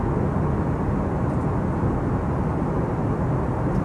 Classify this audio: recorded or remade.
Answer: recorded